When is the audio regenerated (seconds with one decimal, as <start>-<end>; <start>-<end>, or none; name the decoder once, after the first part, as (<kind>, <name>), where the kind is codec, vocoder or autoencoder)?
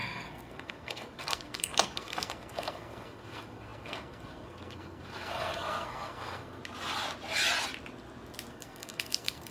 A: 0.0-6.6 (codec, SNAC); 8.5-9.5